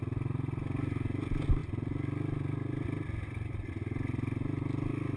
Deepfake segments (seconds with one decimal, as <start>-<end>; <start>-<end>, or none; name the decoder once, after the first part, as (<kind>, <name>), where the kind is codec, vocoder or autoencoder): none